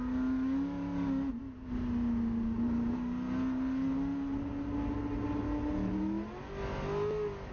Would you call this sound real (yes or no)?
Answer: yes